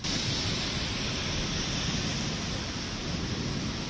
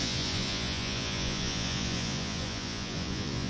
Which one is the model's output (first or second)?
second